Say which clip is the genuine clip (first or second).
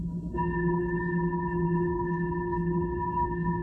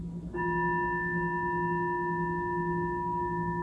second